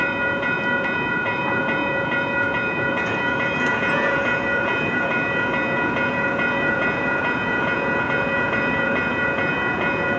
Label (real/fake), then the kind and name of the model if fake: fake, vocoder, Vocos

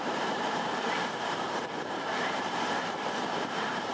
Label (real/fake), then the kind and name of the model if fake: fake, vocoder, BigVGAN v2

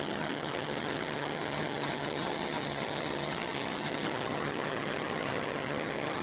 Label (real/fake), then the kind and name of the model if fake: fake, vocoder, HiFi-GAN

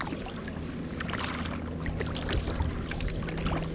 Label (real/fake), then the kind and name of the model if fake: real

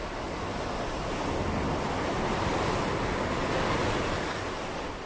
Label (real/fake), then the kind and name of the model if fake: real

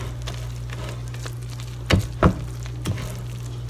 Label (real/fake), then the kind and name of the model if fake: real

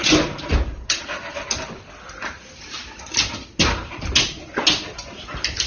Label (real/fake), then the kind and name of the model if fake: real